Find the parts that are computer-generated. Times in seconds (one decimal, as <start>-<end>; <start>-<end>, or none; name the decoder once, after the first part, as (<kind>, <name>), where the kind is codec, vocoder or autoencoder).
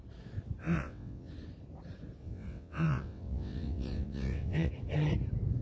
0.6-1.3 (vocoder, WaveNeXt); 2.2-4.7